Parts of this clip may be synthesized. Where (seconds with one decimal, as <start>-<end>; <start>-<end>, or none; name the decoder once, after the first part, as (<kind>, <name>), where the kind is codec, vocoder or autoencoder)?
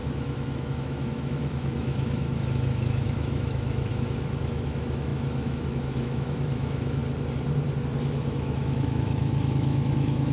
0.0-7.0 (autoencoder, DAC-VAE); 8.0-10.3